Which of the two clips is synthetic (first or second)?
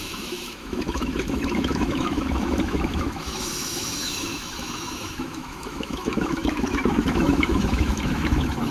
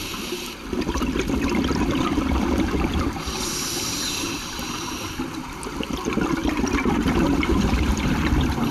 first